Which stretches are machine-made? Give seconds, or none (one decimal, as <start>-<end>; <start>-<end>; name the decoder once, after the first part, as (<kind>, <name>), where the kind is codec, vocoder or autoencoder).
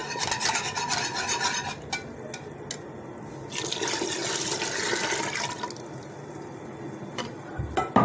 none